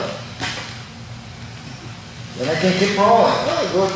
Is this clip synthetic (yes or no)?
no